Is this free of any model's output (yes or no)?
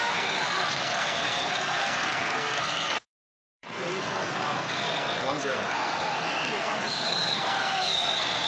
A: no